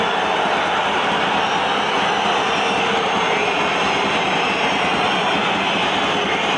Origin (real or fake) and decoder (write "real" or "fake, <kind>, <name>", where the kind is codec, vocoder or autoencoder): real